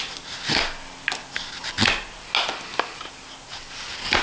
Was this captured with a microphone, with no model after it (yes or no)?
yes